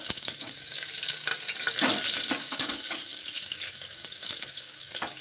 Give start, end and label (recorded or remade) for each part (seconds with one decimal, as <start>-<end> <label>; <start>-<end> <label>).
0.0-1.3 remade; 1.3-2.3 recorded; 2.3-5.2 remade